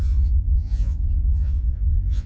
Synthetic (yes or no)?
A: yes